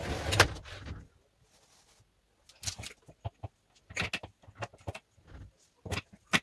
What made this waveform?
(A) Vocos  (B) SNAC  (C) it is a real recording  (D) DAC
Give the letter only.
C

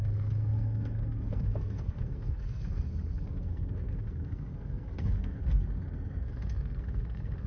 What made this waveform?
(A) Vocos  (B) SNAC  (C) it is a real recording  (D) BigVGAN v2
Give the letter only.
B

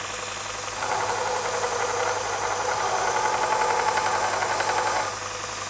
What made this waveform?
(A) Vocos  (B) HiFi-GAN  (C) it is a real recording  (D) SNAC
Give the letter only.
C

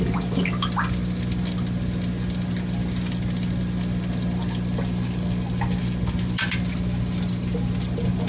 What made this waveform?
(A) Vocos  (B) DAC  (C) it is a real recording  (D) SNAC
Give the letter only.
C